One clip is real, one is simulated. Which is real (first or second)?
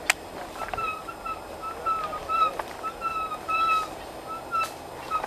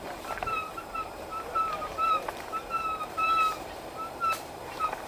first